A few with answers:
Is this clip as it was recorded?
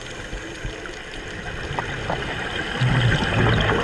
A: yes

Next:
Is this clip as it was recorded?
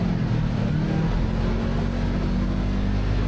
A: yes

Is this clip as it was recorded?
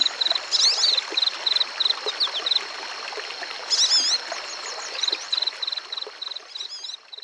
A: yes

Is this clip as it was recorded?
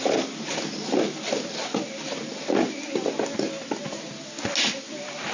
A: yes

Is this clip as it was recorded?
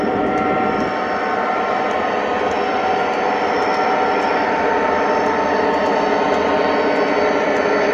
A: yes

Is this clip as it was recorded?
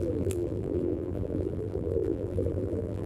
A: no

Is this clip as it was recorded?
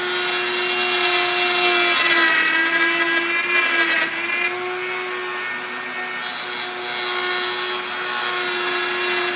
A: yes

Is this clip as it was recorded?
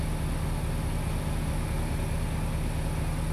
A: yes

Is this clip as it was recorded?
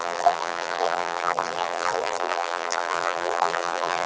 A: no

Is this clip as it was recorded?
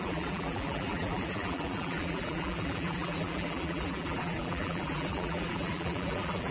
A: no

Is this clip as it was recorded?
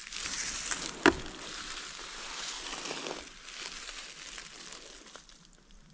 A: yes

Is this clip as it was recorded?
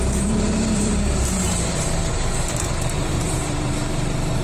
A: no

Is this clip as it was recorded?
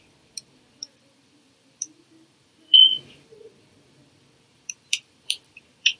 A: no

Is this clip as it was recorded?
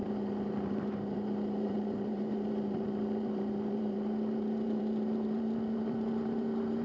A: no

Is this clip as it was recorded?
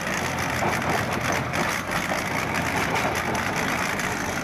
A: no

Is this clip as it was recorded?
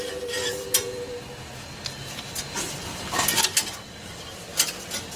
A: yes